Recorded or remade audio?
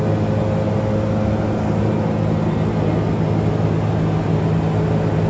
recorded